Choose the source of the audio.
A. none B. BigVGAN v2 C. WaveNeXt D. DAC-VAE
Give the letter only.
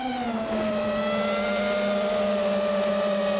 A